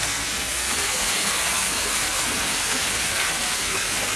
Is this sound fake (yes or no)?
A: yes